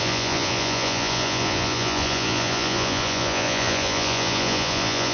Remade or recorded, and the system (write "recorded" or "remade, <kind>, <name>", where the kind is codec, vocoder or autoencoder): remade, vocoder, Vocos